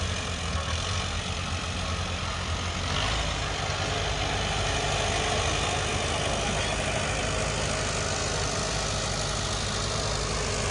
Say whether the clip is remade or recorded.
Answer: recorded